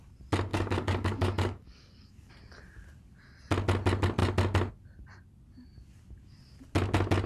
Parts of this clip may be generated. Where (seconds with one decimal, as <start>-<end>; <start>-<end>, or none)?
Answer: 0.5-2.3